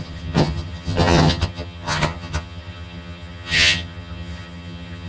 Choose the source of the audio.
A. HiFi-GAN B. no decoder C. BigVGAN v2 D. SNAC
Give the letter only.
A